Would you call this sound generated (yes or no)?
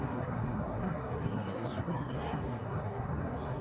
yes